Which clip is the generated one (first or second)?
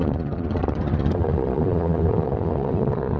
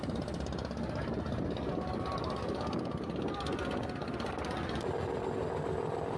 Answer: first